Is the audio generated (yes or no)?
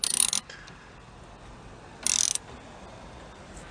no